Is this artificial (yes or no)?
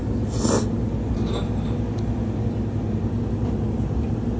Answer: no